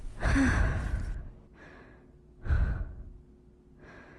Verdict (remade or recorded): recorded